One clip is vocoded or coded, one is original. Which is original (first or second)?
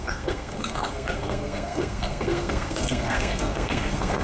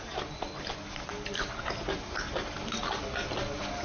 second